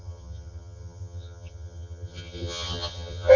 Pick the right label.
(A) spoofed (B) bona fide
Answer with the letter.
A